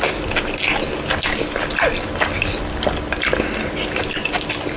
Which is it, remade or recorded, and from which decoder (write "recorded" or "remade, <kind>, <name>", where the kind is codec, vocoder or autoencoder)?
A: recorded